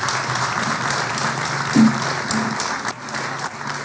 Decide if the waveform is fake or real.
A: real